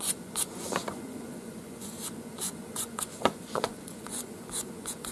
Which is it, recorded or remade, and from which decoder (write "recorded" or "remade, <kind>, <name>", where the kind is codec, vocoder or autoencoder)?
remade, vocoder, Vocos